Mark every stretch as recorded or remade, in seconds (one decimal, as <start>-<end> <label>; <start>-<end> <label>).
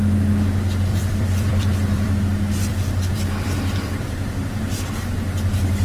0.0-0.9 recorded; 0.9-2.2 remade; 2.2-2.6 recorded; 2.6-4.5 remade; 4.5-5.8 recorded